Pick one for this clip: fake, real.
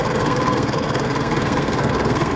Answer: fake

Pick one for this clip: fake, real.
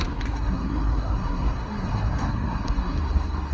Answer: fake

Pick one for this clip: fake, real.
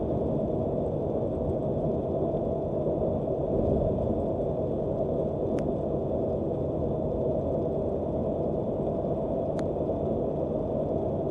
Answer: real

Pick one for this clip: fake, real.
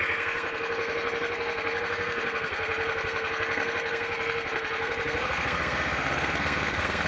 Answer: fake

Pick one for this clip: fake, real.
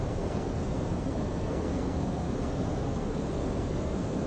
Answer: fake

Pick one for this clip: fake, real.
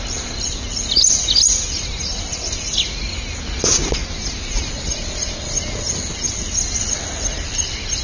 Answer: real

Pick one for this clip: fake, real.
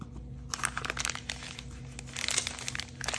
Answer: real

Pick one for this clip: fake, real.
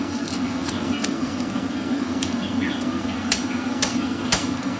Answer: fake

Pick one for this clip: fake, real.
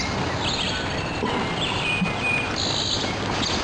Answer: real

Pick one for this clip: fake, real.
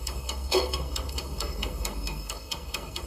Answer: fake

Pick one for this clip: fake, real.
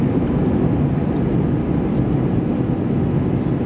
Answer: real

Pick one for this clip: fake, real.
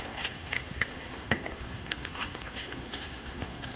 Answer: fake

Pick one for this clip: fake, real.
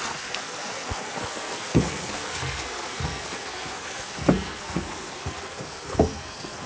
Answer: fake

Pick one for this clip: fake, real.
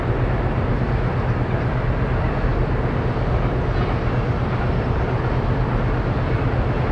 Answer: real